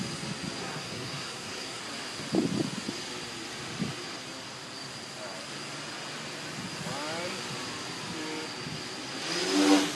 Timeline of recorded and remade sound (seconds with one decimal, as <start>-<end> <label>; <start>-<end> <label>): 0.0-0.6 recorded; 0.6-1.8 remade; 1.8-10.0 recorded